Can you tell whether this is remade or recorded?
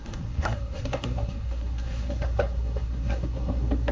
remade